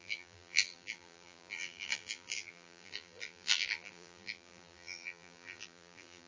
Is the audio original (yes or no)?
no